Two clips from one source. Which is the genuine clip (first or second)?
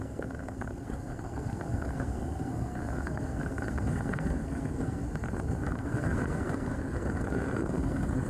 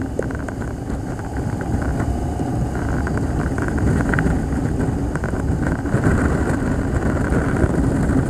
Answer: second